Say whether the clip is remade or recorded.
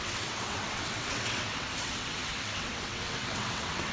remade